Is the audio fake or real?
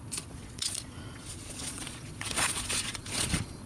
fake